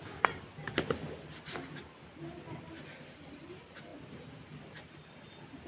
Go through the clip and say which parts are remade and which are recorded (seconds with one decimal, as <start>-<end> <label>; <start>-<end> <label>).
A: 0.0-5.7 recorded